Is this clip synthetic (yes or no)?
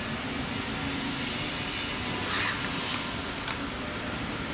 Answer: no